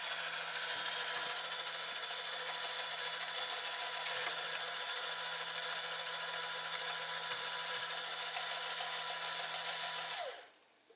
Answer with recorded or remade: recorded